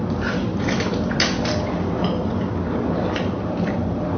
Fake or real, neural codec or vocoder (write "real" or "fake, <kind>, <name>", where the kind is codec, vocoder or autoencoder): real